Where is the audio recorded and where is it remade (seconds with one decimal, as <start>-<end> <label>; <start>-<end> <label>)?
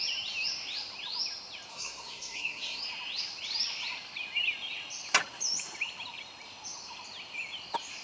0.0-1.7 recorded; 1.7-2.8 remade; 2.8-8.0 recorded